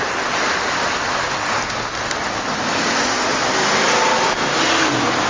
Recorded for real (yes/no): yes